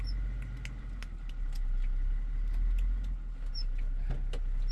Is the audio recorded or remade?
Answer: recorded